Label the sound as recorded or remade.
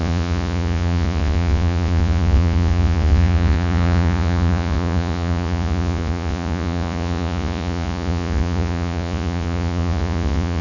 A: remade